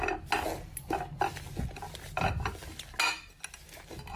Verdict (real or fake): real